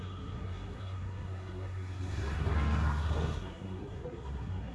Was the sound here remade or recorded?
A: remade